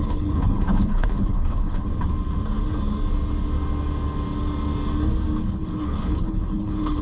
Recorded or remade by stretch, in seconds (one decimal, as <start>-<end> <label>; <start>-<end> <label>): 0.0-1.9 remade; 1.9-5.4 recorded; 5.4-7.0 remade